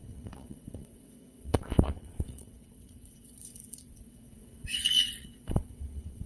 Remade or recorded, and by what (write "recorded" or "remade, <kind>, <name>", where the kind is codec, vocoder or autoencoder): remade, vocoder, WaveNeXt